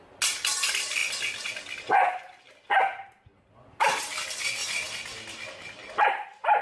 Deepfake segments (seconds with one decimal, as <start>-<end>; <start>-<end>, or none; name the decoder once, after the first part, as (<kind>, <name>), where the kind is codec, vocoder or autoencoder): none